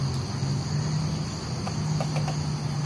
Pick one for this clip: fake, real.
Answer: real